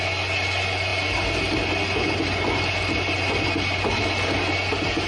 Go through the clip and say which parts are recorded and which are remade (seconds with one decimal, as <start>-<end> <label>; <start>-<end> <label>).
0.0-5.1 recorded